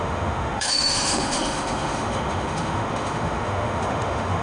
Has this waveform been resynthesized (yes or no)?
yes